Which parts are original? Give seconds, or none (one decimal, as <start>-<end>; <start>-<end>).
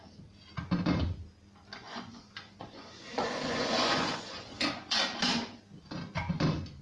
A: 0.0-1.8; 5.0-6.8